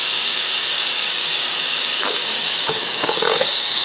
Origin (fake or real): fake